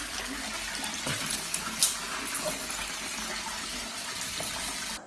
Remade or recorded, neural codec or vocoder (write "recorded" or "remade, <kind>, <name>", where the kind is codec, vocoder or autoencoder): recorded